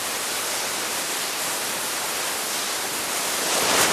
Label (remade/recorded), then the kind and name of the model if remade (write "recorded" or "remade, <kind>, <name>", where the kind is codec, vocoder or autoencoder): recorded